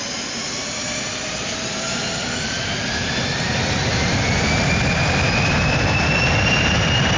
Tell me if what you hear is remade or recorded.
recorded